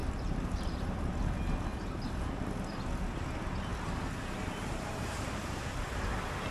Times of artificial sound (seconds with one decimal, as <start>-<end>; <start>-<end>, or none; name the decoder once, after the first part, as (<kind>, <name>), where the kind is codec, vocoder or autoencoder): 0.0-1.1 (vocoder, BigVGAN v2); 1.7-2.4

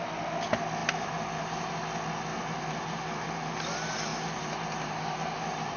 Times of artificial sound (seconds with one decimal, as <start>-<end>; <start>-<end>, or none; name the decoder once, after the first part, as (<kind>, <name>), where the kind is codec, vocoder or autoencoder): 0.8-1.7 (vocoder, BigVGAN v2); 2.3-3.5; 4.1-5.8

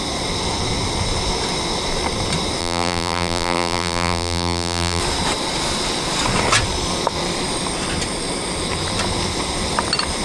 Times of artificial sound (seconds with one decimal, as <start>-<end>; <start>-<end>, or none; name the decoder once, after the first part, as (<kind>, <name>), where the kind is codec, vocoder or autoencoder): 2.6-5.0 (vocoder, BigVGAN v2)

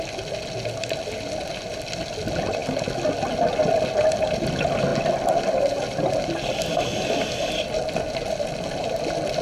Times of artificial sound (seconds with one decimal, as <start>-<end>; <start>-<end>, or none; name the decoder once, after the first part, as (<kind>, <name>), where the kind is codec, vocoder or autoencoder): none

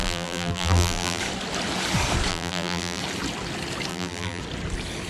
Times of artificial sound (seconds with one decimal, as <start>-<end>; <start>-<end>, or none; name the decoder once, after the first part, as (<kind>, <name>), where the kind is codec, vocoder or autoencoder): 0.0-1.2 (vocoder, BigVGAN v2); 2.3-3.0; 3.9-4.4

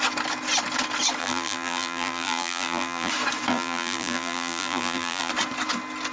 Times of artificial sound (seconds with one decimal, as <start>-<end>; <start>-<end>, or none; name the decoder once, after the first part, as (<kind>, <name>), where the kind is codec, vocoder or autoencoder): 1.2-3.1 (vocoder, BigVGAN v2); 3.5-5.3